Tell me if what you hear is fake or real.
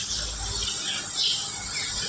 real